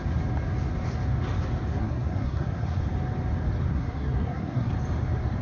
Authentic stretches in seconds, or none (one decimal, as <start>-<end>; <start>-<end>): 0.0-1.7; 2.8-3.7; 4.7-5.4